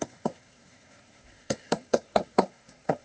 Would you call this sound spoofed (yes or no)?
yes